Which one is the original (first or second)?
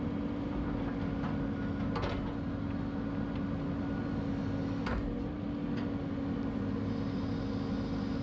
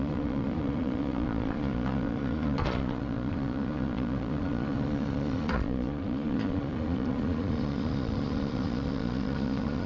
first